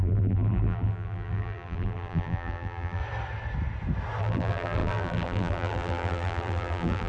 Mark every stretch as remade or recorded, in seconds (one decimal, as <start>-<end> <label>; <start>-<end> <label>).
0.0-3.0 remade; 3.0-4.2 recorded; 4.2-7.1 remade